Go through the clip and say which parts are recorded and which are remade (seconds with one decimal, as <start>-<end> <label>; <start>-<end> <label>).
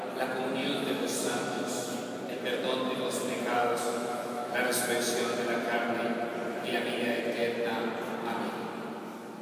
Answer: 0.0-0.6 recorded; 0.6-2.0 remade; 2.0-3.6 recorded; 3.6-4.5 remade; 4.5-9.4 recorded